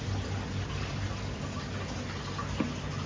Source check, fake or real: real